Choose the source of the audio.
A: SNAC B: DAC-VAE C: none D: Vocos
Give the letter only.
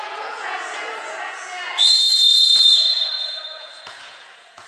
D